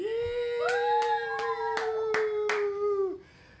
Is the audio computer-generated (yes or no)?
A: no